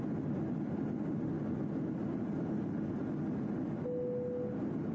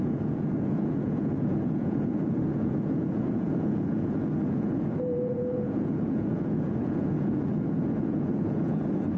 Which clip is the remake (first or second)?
second